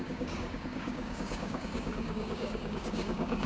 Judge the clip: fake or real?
fake